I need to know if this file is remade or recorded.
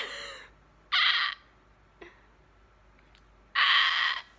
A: recorded